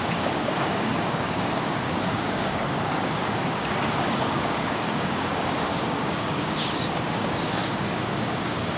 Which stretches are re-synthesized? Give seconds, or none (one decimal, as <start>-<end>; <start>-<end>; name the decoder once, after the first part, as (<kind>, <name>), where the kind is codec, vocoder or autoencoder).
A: 0.0-8.8 (codec, DAC)